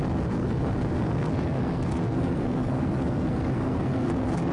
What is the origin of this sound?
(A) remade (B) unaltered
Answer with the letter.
A